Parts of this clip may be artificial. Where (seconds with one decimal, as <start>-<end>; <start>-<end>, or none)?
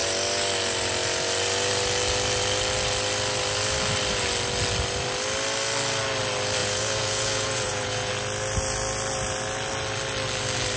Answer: 6.6-8.1